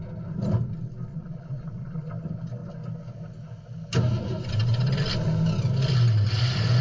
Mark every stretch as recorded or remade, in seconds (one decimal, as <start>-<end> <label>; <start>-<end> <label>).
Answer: 0.0-1.1 recorded; 1.1-2.1 remade; 2.1-6.8 recorded